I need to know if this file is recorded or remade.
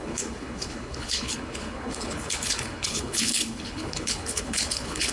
remade